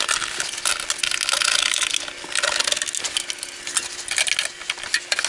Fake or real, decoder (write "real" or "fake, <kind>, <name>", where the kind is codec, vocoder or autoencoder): real